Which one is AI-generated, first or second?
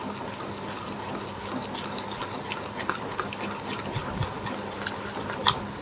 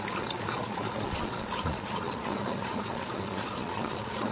second